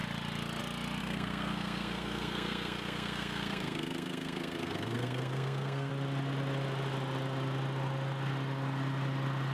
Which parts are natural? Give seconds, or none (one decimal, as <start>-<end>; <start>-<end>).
0.0-1.0; 5.9-9.5